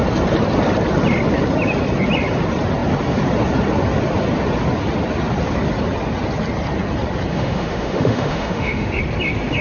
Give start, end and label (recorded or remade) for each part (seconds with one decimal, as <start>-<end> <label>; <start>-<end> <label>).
0.0-7.3 recorded; 7.3-9.0 remade; 9.0-9.6 recorded